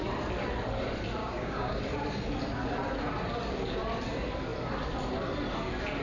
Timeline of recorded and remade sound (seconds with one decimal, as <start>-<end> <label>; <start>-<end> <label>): 0.0-1.2 recorded; 1.2-1.8 remade; 1.8-6.0 recorded